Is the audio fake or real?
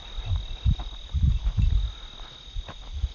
real